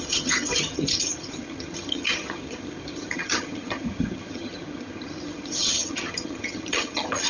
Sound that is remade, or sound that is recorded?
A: remade